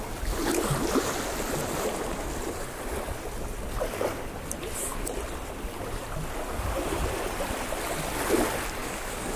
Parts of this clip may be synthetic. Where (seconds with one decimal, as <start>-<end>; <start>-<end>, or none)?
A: 8.8-9.4